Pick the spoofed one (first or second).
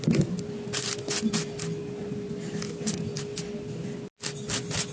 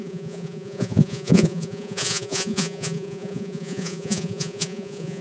second